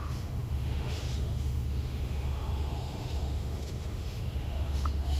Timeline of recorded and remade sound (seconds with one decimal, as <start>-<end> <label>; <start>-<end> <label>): 0.0-5.2 remade